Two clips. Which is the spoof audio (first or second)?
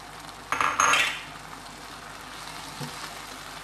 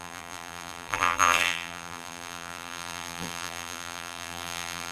second